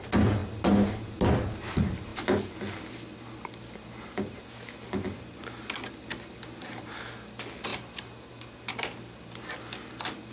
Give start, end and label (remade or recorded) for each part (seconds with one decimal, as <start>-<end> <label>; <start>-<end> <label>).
0.0-10.3 recorded